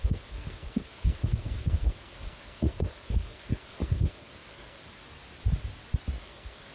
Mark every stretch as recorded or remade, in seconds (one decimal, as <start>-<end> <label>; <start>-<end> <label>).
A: 0.0-4.8 remade; 4.8-6.2 recorded; 6.2-6.7 remade